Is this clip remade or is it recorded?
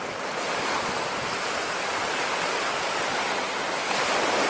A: recorded